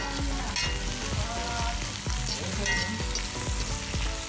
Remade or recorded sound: recorded